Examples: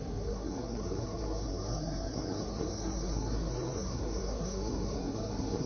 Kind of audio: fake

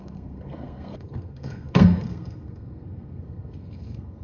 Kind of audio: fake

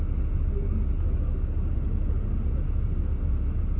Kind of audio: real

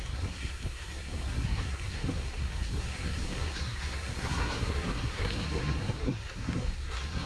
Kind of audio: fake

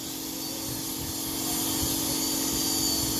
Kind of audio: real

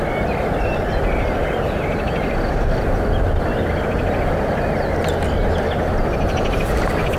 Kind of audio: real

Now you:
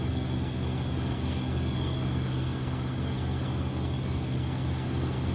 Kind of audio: fake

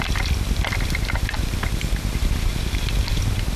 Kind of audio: real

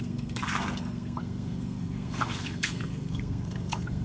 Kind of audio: fake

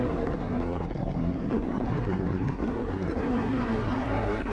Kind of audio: fake